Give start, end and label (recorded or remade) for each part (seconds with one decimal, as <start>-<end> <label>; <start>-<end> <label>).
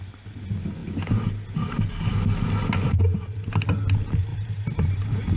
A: 0.0-4.3 recorded; 4.3-5.4 remade